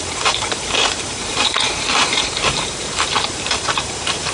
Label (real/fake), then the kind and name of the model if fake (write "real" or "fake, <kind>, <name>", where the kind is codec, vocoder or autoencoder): fake, vocoder, BigVGAN v2